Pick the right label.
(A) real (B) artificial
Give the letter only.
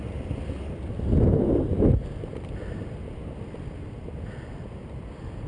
A